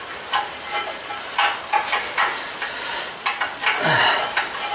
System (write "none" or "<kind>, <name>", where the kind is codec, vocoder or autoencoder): none